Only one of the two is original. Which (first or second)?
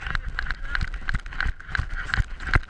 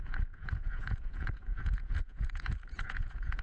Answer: first